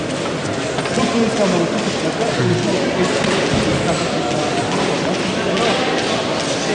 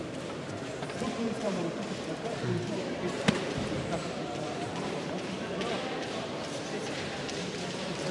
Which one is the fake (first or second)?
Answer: second